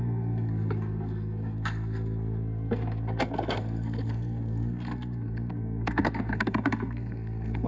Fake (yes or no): yes